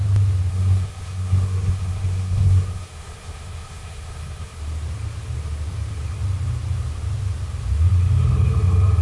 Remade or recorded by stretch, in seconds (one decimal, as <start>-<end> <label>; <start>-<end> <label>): 0.0-0.5 recorded; 0.5-4.6 remade; 4.6-9.0 recorded